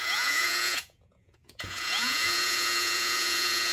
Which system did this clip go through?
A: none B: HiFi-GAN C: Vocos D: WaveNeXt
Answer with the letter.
C